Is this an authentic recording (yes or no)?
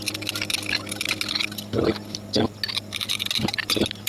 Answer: yes